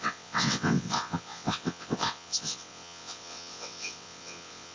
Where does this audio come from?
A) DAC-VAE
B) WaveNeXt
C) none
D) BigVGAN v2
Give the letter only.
B